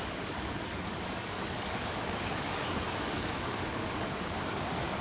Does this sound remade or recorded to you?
remade